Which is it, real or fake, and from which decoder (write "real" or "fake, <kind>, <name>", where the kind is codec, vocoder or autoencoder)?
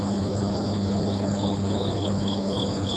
fake, codec, HILCodec